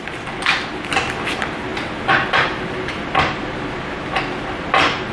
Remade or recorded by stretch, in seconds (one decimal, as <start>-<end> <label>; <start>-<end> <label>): 0.0-5.1 recorded

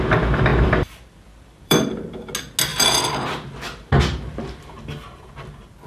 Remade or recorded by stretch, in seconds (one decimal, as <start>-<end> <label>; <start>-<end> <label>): 0.0-0.5 recorded; 0.5-2.1 remade; 2.1-2.7 recorded; 2.7-4.6 remade; 4.6-5.9 recorded

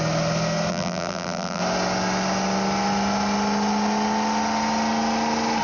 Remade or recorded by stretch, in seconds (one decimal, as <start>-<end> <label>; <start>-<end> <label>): 0.0-0.7 recorded; 0.7-1.6 remade; 1.6-5.6 recorded